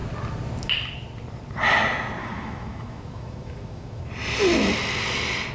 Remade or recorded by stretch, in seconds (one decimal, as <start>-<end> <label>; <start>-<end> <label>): 0.0-2.2 recorded; 2.2-4.0 remade; 4.0-5.5 recorded